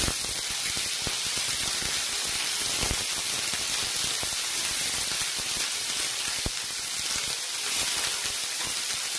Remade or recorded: recorded